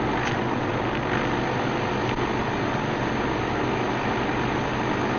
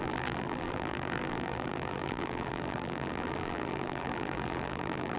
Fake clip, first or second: second